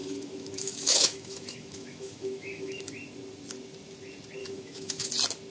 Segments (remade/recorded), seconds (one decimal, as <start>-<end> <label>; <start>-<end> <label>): 0.0-2.8 remade; 2.8-4.4 recorded; 4.4-5.1 remade; 5.1-5.5 recorded